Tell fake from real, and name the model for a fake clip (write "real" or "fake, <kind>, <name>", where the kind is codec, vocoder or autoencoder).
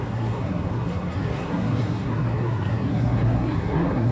fake, codec, SNAC